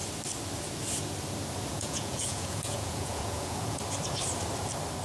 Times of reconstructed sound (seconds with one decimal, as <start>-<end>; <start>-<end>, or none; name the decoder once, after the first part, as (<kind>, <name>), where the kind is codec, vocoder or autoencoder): 1.7-3.8 (vocoder, Vocos)